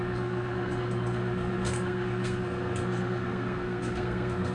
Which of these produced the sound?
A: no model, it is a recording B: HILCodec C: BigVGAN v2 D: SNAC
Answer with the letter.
D